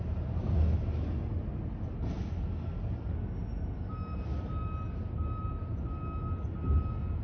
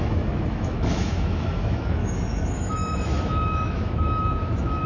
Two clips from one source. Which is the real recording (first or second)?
first